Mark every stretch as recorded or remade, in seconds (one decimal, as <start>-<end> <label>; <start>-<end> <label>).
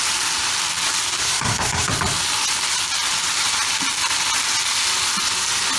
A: 0.0-1.2 recorded; 1.2-1.9 remade; 1.9-5.8 recorded